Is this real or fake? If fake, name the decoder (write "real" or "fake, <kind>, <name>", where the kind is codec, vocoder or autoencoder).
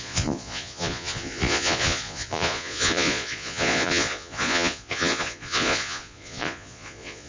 fake, vocoder, Vocos